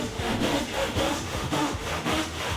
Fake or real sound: fake